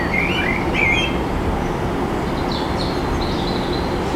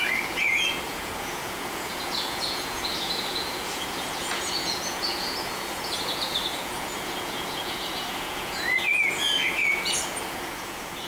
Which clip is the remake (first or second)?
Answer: second